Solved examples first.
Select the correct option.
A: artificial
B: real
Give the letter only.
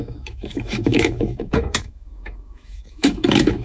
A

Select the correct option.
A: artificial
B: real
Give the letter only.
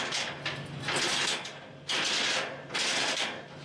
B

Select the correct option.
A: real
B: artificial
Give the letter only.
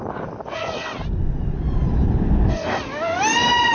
A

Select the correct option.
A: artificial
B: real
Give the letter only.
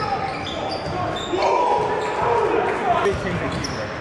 B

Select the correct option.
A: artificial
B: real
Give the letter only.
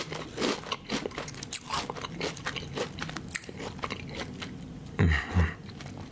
B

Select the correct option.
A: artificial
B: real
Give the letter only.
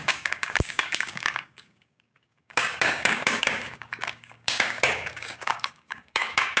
A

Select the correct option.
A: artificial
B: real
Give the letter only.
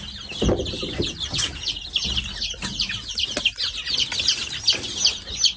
B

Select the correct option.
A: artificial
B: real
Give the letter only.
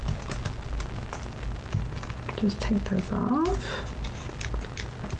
B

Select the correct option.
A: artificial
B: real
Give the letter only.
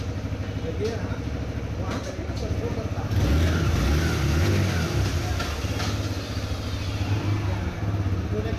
B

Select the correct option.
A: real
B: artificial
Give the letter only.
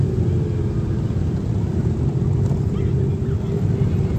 A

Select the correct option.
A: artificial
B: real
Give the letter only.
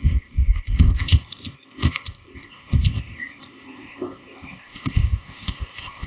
A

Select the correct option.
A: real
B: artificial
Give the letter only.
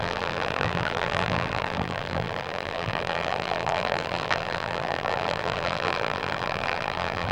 B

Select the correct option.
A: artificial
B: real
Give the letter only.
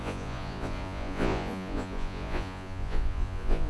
A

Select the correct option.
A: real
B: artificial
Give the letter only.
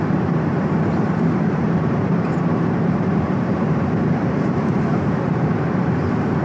B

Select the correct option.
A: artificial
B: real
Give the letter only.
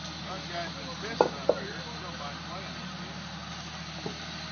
B